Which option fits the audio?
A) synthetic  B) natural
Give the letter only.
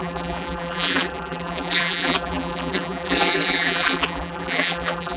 A